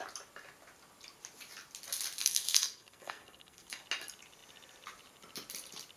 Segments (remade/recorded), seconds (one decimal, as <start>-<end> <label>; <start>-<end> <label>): 0.0-2.2 recorded; 2.2-3.8 remade; 3.8-6.0 recorded